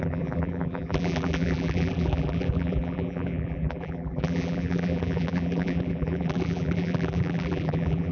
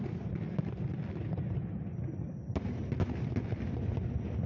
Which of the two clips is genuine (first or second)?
second